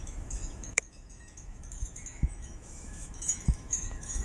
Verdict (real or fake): fake